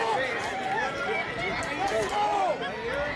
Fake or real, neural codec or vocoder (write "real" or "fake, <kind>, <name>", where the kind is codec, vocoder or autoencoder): real